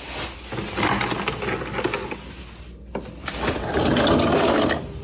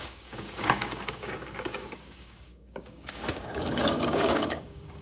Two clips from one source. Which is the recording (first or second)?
first